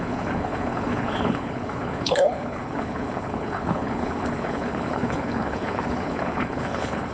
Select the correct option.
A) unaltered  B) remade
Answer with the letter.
B